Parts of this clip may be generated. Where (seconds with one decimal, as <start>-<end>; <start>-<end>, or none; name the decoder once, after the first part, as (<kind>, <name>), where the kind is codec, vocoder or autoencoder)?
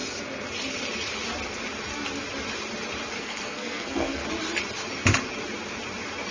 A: 3.2-4.2 (codec, SNAC)